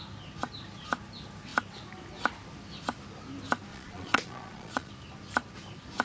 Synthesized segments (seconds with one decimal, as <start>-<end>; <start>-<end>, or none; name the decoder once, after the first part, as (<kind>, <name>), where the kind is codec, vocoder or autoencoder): 3.7-4.9 (vocoder, Vocos)